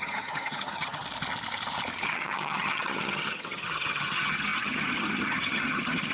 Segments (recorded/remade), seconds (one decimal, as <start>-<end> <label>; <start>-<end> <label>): 0.0-1.0 remade; 1.0-2.1 recorded; 2.1-6.1 remade